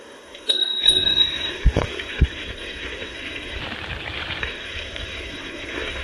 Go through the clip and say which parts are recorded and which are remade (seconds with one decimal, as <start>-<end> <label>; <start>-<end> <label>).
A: 0.0-3.6 remade; 3.6-4.4 recorded; 4.4-6.0 remade